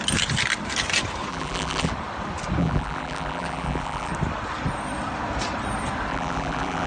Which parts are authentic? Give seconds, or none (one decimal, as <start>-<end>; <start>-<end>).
0.0-1.3; 1.9-2.6; 4.1-6.1